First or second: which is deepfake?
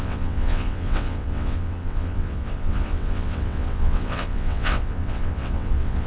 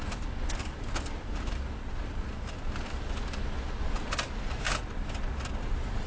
first